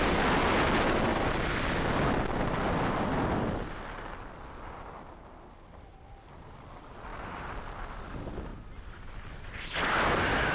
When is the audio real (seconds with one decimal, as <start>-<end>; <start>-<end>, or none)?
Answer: 0.0-10.5